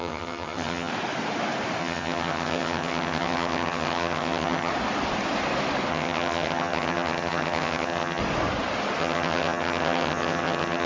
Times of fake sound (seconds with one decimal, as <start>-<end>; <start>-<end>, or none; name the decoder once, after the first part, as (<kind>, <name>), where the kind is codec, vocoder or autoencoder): 0.0-0.9 (vocoder, HiFi-GAN); 1.8-4.7; 5.9-8.2; 9.0-10.9